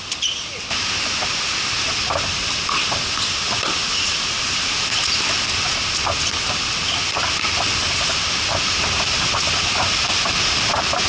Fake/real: real